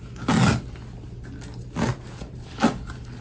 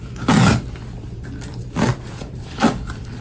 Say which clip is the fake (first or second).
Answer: second